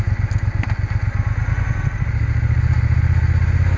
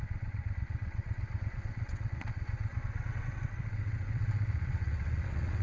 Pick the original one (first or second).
first